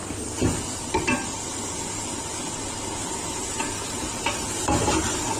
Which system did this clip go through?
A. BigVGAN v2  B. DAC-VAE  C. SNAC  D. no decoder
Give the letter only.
D